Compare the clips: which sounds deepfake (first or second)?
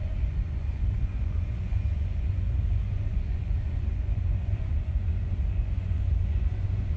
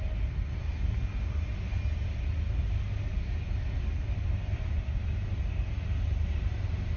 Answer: first